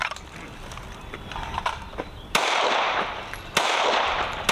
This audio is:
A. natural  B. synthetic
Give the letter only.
B